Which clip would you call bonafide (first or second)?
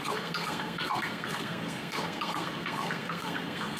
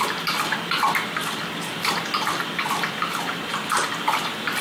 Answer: second